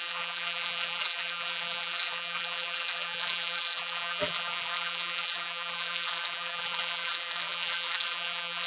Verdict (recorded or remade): remade